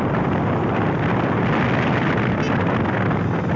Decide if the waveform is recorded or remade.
recorded